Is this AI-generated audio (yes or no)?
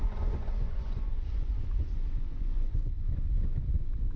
yes